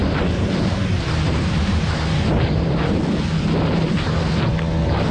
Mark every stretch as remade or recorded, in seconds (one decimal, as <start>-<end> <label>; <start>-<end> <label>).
0.0-3.0 remade; 3.0-5.1 recorded